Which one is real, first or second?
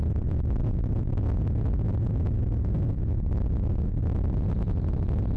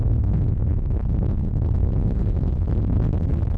first